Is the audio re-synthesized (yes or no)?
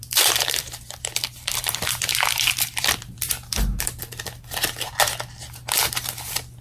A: yes